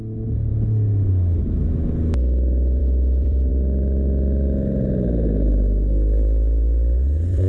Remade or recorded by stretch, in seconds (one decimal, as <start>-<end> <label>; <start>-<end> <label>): 0.0-2.8 recorded; 2.8-3.5 remade; 3.5-7.5 recorded